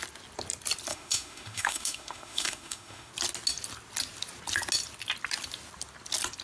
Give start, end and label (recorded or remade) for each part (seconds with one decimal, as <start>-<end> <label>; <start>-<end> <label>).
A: 0.0-0.9 recorded; 0.9-3.1 remade; 3.1-6.4 recorded